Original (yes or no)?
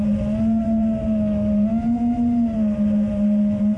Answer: yes